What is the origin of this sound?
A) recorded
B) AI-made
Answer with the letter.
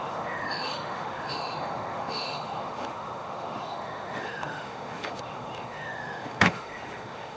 B